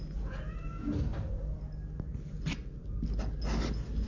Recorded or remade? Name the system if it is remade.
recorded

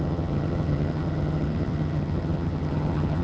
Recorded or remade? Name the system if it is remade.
remade, vocoder, HiFi-GAN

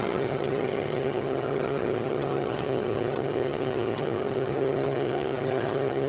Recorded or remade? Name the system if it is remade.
remade, vocoder, HiFi-GAN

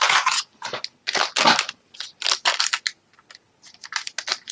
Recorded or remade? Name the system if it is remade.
recorded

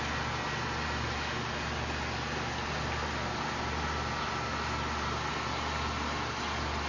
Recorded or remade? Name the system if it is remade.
recorded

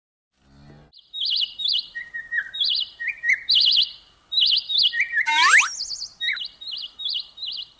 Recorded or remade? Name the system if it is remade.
recorded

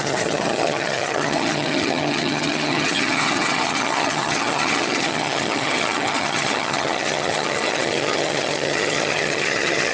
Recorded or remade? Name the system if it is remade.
remade, vocoder, HiFi-GAN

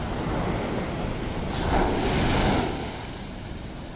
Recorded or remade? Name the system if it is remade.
recorded